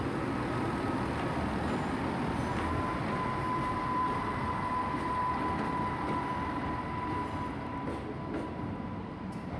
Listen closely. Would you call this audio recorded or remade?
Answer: recorded